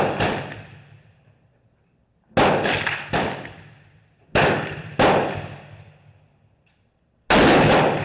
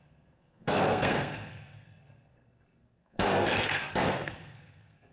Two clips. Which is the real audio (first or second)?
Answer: first